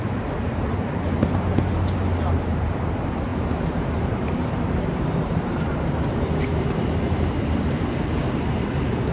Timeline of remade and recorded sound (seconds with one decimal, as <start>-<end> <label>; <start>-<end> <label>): 0.0-9.1 remade